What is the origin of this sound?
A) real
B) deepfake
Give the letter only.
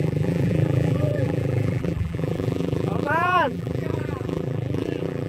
B